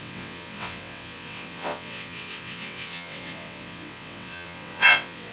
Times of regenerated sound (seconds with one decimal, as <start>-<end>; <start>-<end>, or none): 0.0-5.3